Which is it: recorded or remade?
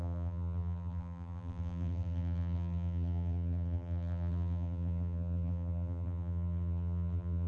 remade